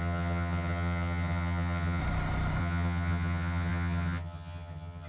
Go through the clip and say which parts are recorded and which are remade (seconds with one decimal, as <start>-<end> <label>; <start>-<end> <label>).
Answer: 0.0-2.0 remade; 2.0-2.6 recorded; 2.6-5.1 remade